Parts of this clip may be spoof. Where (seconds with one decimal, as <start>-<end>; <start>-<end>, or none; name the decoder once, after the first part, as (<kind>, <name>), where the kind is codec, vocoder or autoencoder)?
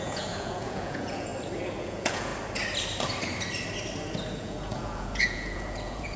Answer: 0.0-1.3 (vocoder, Vocos); 1.8-2.3; 4.4-6.2